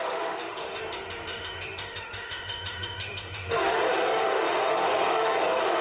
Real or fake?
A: fake